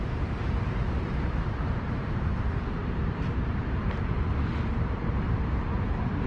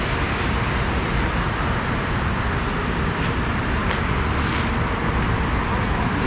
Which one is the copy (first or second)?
first